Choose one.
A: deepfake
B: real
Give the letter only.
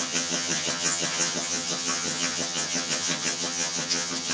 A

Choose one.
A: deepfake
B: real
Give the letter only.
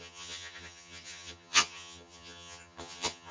A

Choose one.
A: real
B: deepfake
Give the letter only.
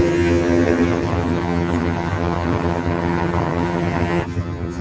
B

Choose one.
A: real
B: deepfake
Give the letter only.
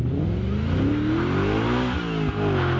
A